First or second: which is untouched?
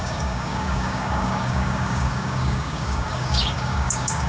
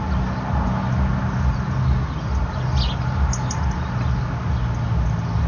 second